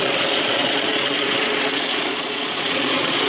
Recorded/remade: remade